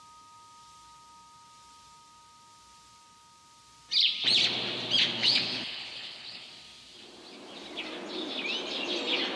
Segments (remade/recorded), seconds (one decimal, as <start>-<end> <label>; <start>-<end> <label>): 0.0-5.2 recorded; 5.2-6.5 remade; 6.5-9.4 recorded